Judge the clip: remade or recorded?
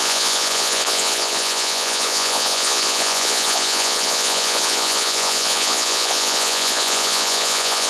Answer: remade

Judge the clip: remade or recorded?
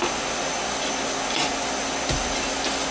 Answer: recorded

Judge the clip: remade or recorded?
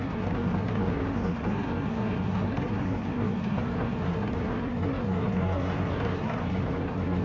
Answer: remade